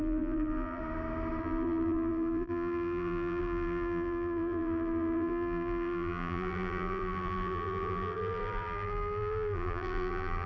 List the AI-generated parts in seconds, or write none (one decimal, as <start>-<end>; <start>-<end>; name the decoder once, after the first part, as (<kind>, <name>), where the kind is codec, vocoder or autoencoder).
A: 0.0-0.8 (vocoder, BigVGAN v2); 1.4-10.5